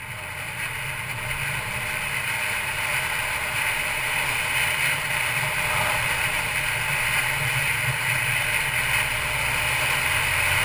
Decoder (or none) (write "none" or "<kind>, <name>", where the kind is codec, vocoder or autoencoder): none